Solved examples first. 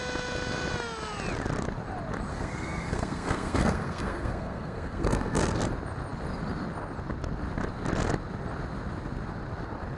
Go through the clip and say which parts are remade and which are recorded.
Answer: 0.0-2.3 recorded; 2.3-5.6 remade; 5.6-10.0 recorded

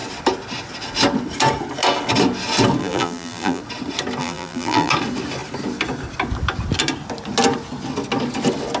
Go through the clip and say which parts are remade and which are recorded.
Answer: 0.0-2.8 recorded; 2.8-3.6 remade; 3.6-4.2 recorded; 4.2-4.9 remade; 4.9-8.8 recorded

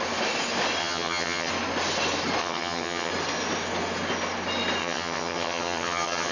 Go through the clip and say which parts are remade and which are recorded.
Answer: 0.0-0.8 recorded; 0.8-1.5 remade; 1.5-2.4 recorded; 2.4-3.1 remade; 3.1-4.8 recorded; 4.8-6.3 remade

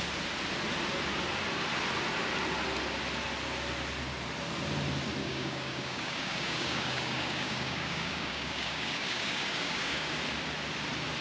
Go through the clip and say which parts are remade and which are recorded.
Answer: 0.0-5.2 recorded; 5.2-10.2 remade; 10.2-11.2 recorded

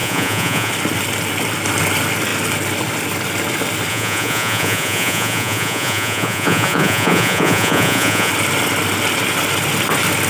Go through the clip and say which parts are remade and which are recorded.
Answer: 0.0-0.7 remade; 0.7-3.9 recorded; 3.9-8.3 remade; 8.3-10.3 recorded

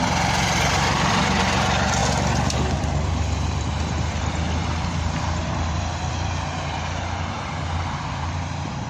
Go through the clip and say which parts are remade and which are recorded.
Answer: 0.0-2.0 remade; 2.0-2.8 recorded; 2.8-8.9 remade

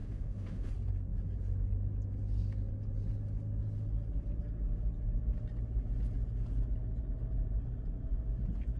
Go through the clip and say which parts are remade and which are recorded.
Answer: 0.0-0.7 remade; 0.7-8.8 recorded

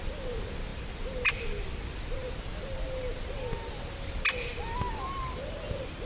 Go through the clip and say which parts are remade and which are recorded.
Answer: 0.0-6.1 recorded